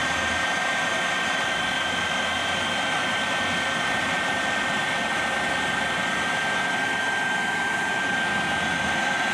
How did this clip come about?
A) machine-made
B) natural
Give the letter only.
B